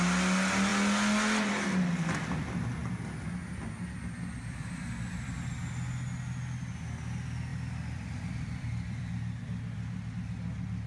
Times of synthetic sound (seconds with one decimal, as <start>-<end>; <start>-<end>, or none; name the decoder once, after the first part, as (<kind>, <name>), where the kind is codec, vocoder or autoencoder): 7.5-9.1 (vocoder, BigVGAN v2)